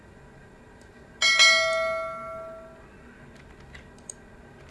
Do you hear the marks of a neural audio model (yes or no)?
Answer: no